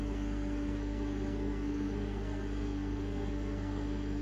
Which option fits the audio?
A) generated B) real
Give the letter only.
A